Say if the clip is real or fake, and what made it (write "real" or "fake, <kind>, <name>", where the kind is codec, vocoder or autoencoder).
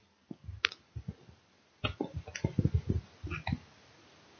real